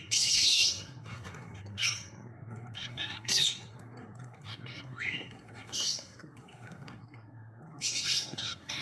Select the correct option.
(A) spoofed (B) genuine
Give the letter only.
A